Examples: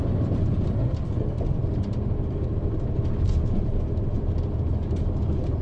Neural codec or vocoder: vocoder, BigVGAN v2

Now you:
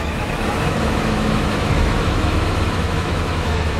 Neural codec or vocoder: autoencoder, DAC-VAE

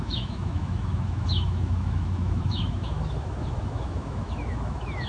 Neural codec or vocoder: autoencoder, DAC-VAE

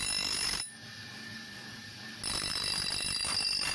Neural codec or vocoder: none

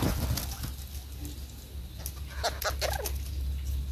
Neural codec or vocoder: none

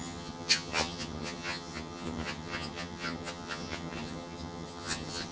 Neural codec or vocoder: vocoder, HiFi-GAN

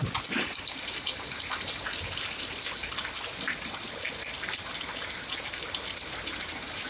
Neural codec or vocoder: none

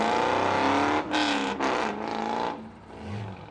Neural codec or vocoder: none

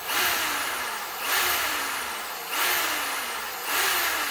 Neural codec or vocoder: vocoder, BigVGAN v2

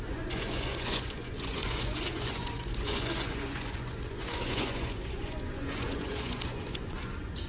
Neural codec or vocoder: vocoder, Vocos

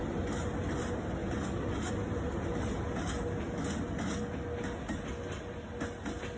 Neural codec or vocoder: none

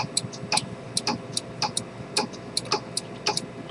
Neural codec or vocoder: none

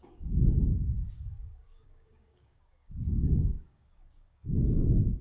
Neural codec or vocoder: codec, DAC